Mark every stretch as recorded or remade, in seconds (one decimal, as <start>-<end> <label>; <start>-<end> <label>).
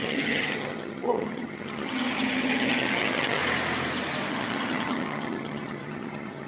0.0-3.4 remade; 3.4-4.3 recorded; 4.3-6.5 remade